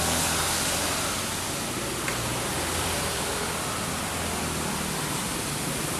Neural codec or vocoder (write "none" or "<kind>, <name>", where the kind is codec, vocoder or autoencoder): none